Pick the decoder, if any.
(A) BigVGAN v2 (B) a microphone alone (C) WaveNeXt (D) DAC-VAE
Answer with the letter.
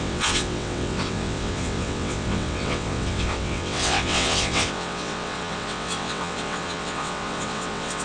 C